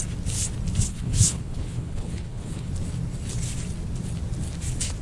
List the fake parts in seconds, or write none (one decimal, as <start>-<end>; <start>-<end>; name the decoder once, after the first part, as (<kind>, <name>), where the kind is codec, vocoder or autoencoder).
0.9-2.7 (codec, HILCodec)